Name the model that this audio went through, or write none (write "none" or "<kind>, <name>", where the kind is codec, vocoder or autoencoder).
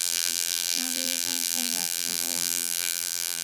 vocoder, BigVGAN v2